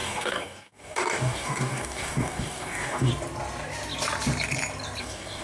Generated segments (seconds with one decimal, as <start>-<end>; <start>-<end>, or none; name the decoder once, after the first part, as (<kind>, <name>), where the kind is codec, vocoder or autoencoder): 0.0-3.1 (codec, DAC); 5.0-5.4